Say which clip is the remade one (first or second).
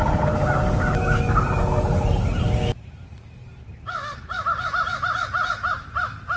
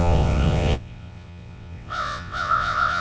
second